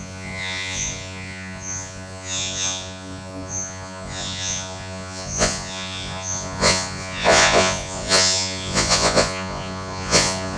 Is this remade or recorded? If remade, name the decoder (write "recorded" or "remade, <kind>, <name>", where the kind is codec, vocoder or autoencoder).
remade, vocoder, Vocos